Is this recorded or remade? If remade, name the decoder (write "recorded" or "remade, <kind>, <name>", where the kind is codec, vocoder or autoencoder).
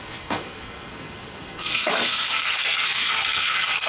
remade, codec, SNAC